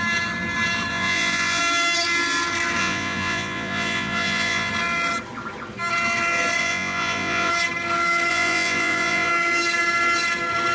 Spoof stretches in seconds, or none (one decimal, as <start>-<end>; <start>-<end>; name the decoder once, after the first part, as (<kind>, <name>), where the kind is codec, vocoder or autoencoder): 0.9-1.6 (vocoder, Vocos); 2.8-4.7; 6.6-7.5; 8.3-9.3